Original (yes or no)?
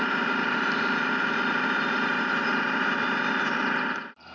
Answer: no